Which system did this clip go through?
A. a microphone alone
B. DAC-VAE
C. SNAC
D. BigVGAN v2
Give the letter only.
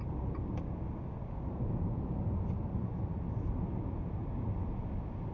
A